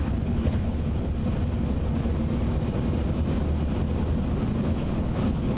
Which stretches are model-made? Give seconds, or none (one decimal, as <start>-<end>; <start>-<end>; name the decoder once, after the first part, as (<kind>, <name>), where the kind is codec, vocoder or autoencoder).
0.0-1.2 (codec, HILCodec); 4.6-5.6